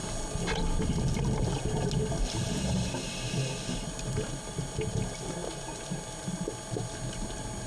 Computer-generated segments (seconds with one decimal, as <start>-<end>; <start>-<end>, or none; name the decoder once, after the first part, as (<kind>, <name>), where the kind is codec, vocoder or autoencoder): none